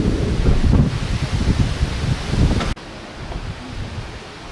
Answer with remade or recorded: recorded